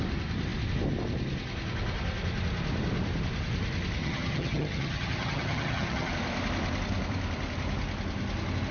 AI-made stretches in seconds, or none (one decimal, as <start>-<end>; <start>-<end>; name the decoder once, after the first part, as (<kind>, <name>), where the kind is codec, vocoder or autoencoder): 4.0-6.1 (vocoder, HiFi-GAN)